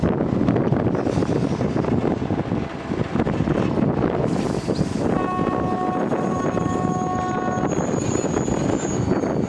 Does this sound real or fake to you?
real